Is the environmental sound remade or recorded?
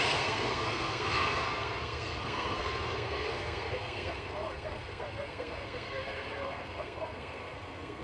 remade